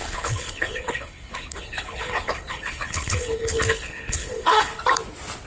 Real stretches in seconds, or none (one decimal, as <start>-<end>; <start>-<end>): 4.7-5.5